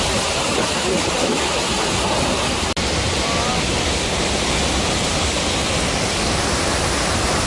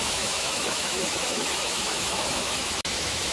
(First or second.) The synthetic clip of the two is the second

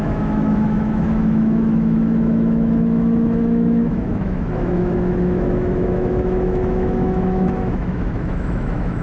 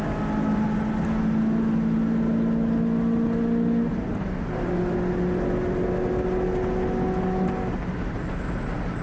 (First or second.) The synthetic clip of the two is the first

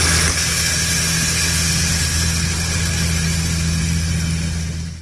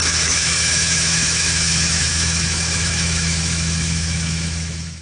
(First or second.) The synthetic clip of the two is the second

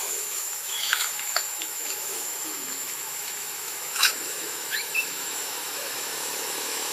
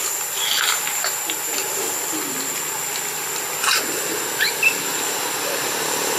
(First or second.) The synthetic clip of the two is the first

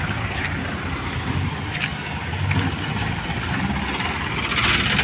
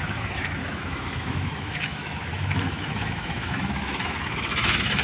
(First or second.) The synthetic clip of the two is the second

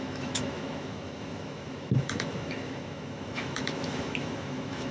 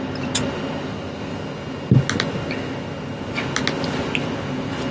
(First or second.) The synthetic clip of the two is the first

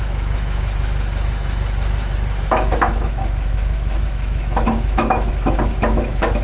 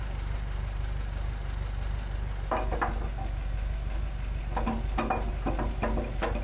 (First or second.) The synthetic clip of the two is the first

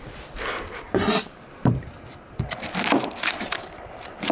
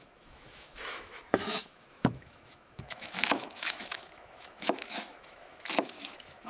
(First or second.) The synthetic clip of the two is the second